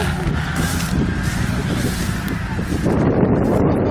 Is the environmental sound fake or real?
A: fake